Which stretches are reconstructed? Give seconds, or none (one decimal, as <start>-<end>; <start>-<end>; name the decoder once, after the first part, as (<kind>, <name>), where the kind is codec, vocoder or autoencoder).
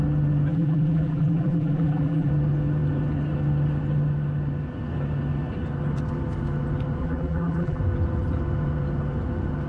0.5-2.3 (vocoder, BigVGAN v2); 7.0-7.8